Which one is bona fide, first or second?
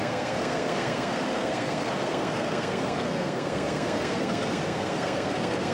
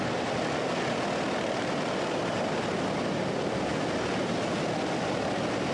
second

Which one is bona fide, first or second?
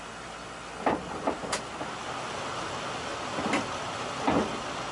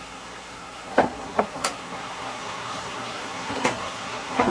first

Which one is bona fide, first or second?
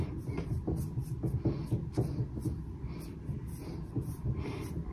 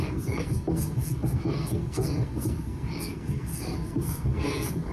first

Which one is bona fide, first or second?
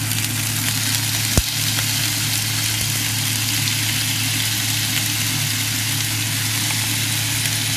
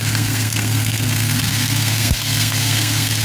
first